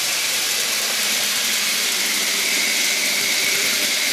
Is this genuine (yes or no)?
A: no